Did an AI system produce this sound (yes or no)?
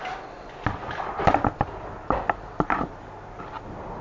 no